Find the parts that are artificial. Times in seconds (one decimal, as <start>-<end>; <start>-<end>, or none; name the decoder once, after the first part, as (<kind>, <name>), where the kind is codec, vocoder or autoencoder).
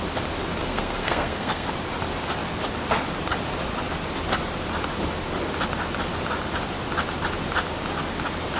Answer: 0.6-1.7 (codec, SNAC)